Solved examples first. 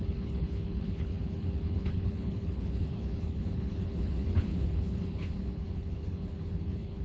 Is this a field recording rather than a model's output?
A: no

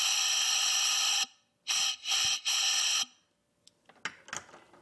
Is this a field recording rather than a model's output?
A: yes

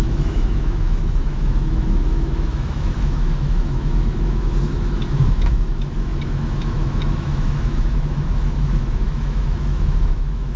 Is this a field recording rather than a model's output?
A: no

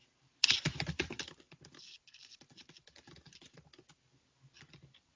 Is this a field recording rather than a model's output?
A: yes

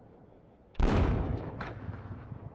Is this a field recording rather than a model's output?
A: no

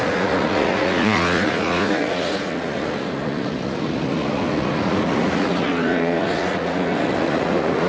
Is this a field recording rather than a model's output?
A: no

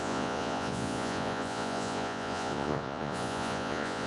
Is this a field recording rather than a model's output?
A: no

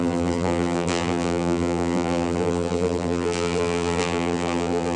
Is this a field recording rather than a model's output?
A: no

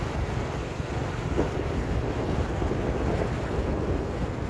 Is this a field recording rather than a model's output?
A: yes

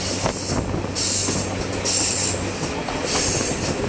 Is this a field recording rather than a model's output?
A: yes